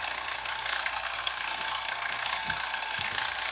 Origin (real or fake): fake